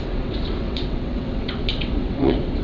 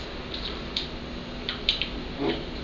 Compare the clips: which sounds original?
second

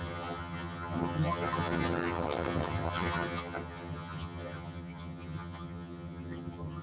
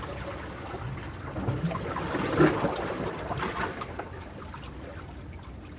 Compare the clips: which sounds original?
second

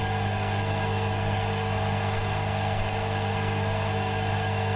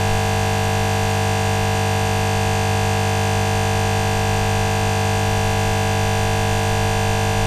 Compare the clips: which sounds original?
second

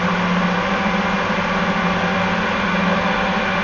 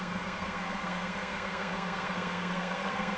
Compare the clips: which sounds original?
first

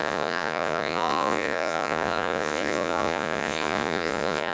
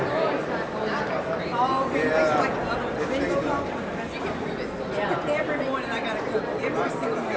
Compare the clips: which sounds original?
second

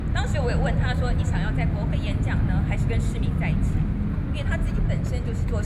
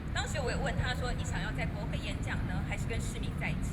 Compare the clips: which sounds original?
first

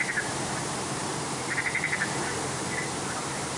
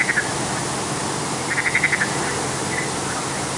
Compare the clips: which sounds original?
second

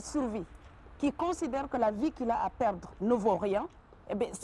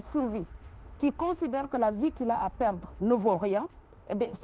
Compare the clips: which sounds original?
first